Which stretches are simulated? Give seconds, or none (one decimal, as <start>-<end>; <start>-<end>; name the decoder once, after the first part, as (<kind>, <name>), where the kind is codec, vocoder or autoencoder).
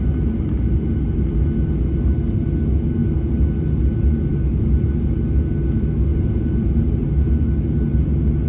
4.3-5.2 (vocoder, BigVGAN v2); 6.1-7.3